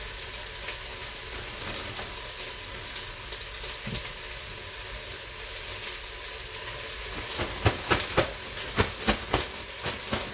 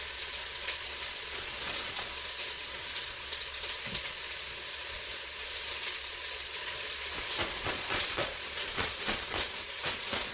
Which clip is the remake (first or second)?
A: second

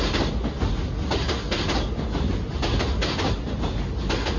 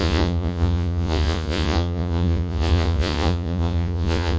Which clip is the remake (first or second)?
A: second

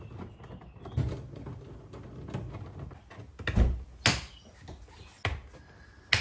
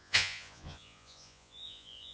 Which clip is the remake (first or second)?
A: second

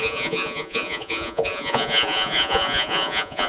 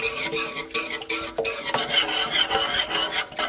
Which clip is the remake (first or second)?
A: first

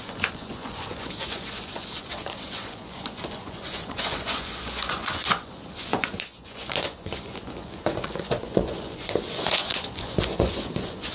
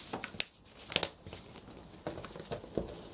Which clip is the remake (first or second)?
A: first